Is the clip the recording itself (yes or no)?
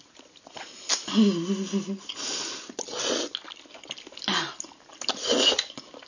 yes